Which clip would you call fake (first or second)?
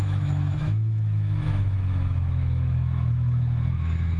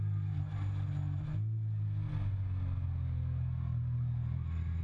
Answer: first